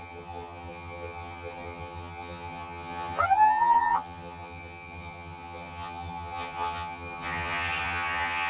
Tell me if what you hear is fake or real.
fake